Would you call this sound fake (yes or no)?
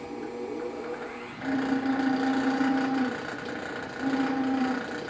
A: no